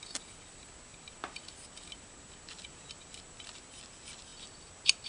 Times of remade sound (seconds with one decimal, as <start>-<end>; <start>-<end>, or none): none

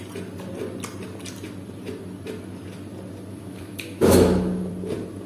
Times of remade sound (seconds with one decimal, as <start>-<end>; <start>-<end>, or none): 3.3-4.7

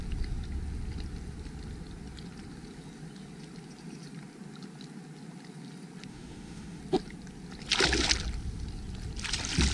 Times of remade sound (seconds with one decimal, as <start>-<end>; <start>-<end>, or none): 6.1-6.8

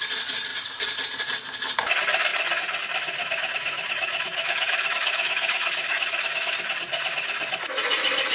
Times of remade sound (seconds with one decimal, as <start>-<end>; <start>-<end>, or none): 3.2-6.7

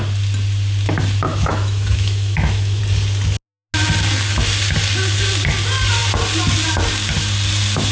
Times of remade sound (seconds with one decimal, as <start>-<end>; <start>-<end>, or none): 1.3-2.8

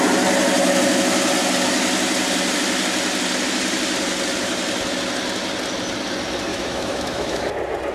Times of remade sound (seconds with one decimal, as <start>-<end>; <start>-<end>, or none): 6.5-7.4

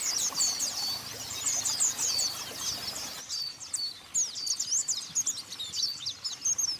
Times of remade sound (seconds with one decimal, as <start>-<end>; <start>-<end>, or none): none

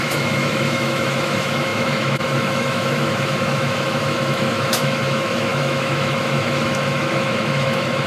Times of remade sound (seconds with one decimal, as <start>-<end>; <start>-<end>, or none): 0.0-8.1